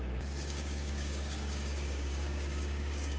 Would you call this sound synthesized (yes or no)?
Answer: yes